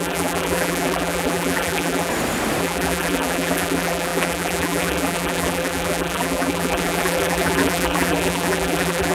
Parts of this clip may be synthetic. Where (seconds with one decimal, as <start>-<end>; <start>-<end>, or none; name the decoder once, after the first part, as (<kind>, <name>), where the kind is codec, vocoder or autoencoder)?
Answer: 0.0-2.1 (vocoder, BigVGAN v2); 2.6-9.1